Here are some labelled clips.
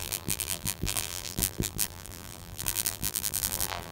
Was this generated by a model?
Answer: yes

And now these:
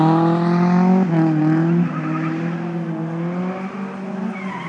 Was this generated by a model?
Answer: no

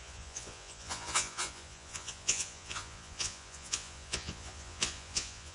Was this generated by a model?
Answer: yes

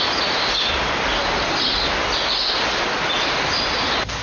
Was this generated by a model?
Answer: no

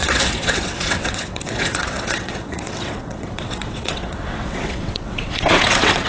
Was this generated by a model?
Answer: yes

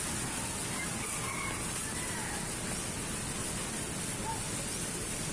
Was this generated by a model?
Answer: no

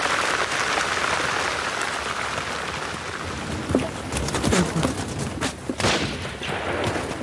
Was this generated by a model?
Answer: no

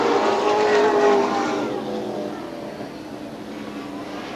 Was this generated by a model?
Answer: no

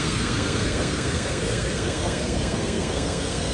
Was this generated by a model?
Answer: yes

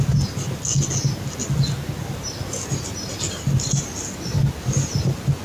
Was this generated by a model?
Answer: no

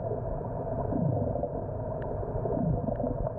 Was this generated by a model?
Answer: no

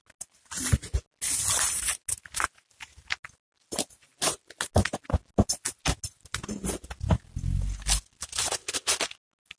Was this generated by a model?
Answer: no